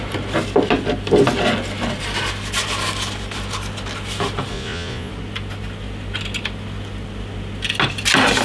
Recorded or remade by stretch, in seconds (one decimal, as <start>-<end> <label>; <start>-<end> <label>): 0.0-4.5 recorded; 4.5-5.1 remade; 5.1-8.4 recorded